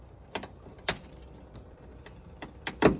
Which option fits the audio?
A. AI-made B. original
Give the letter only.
B